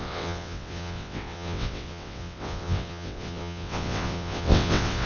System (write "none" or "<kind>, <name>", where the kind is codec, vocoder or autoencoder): vocoder, WaveNeXt